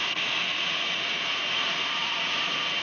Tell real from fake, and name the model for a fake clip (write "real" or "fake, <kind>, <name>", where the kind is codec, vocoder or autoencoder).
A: fake, vocoder, Vocos